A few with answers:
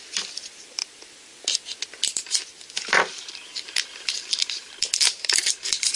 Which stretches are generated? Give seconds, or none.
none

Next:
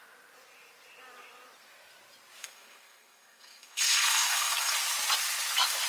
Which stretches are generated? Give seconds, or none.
2.4-4.7 (codec, SNAC)

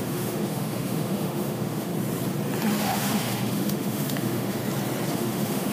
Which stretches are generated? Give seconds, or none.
0.0-1.9 (autoencoder, DAC-VAE); 2.8-4.6; 5.1-5.7

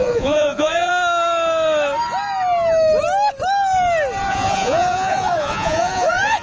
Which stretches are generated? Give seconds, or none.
0.0-0.9 (vocoder, Vocos); 4.3-6.4

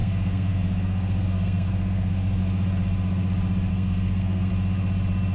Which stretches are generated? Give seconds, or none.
0.0-2.4 (codec, SNAC); 3.7-4.5

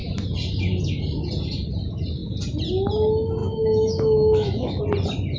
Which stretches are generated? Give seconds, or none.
3.4-4.8 (autoencoder, DAC-VAE)

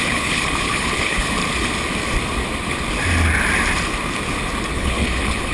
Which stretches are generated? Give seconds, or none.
0.0-1.4 (codec, HILCodec); 4.7-5.5